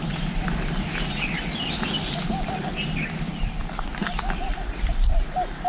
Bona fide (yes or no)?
yes